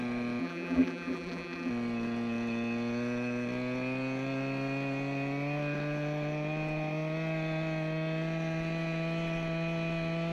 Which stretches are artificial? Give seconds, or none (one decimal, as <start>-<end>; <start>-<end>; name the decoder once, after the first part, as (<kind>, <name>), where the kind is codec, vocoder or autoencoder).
0.4-1.7 (vocoder, BigVGAN v2)